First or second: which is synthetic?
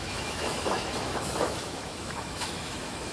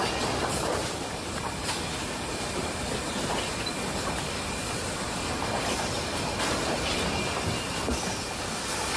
first